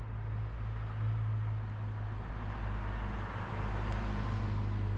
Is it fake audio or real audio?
real